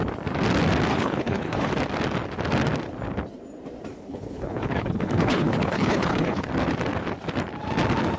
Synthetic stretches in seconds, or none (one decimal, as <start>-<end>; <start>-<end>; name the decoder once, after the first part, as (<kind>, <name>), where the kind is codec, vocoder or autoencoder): 0.9-1.7 (codec, HILCodec); 3.9-6.5